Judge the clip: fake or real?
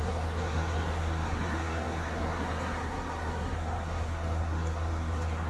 fake